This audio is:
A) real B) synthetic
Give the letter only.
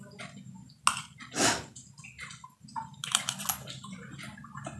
A